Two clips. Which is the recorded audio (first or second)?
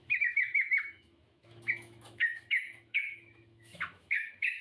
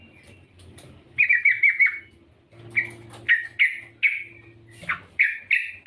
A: second